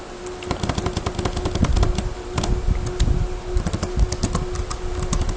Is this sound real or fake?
real